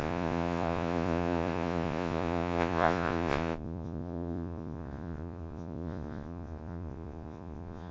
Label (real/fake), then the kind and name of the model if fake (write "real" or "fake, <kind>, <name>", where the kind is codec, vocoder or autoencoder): fake, vocoder, Vocos